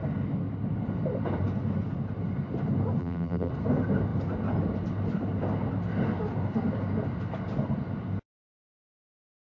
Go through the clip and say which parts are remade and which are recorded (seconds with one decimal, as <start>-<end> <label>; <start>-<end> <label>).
0.0-3.0 recorded; 3.0-3.5 remade; 3.5-9.4 recorded